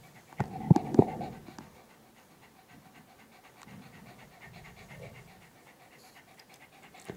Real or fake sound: real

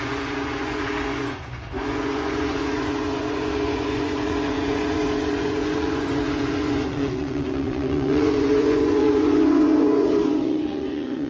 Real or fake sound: fake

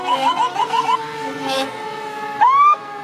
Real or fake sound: fake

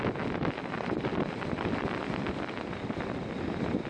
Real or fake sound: fake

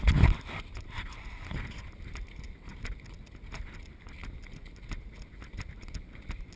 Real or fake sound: real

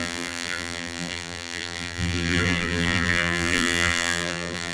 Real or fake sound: fake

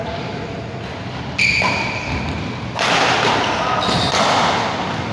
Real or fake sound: real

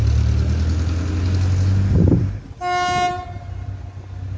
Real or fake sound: real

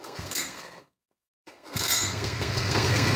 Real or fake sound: fake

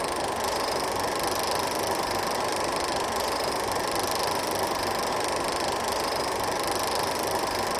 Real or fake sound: real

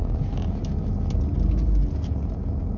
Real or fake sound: real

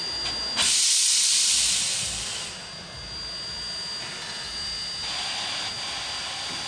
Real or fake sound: real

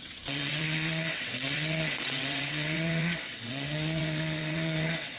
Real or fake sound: fake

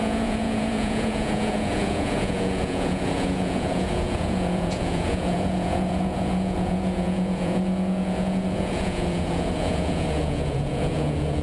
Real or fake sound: fake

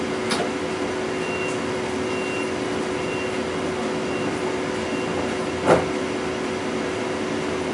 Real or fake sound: real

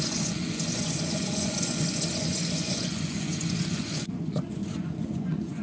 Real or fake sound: fake